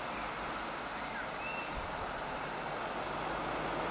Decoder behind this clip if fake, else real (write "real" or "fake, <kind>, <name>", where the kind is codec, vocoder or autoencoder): real